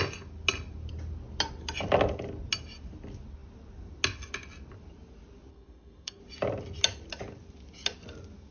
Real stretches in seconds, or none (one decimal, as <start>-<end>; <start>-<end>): 0.0-5.5; 6.2-8.5